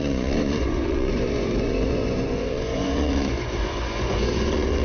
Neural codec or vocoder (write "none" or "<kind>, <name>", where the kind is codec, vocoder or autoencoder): vocoder, Vocos